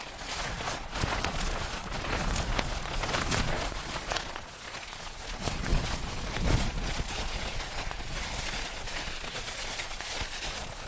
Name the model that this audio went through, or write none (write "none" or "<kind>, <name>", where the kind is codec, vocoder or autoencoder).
vocoder, Vocos